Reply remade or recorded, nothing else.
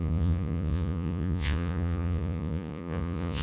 remade